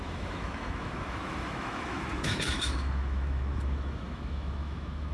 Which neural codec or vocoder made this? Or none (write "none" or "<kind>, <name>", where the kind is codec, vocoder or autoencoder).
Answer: autoencoder, DAC-VAE